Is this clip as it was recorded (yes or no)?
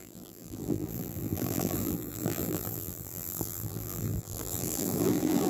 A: no